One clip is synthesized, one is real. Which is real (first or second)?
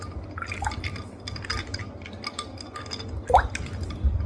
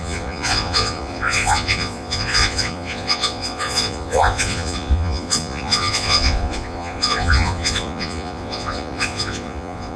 first